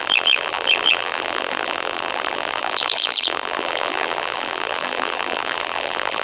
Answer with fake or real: fake